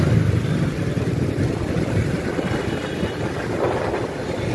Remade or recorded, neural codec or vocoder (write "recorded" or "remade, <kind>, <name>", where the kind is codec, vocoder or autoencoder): recorded